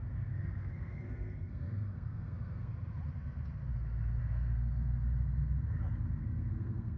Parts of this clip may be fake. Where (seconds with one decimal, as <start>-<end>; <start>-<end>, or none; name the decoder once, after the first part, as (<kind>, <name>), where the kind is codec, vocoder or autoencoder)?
0.0-2.7 (codec, SNAC); 4.2-4.9; 6.2-7.0